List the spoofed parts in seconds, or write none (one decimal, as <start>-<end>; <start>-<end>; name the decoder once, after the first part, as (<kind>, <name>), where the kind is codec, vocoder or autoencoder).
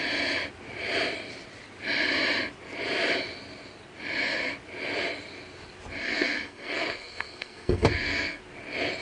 6.0-8.4 (codec, SNAC)